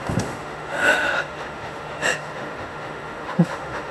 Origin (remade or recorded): remade